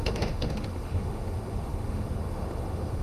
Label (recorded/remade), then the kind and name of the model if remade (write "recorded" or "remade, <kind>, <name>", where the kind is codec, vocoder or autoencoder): remade, autoencoder, DAC-VAE